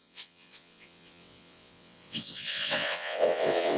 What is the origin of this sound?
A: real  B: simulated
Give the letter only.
B